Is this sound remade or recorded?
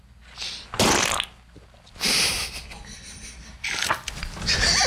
recorded